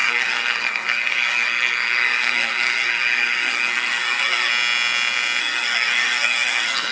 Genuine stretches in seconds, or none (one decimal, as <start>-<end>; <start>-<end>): 4.5-5.4